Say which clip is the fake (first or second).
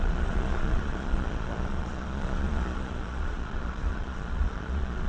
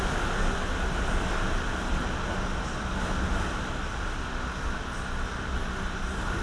first